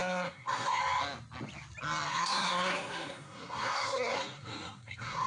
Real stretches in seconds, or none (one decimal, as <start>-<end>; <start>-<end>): 0.8-2.1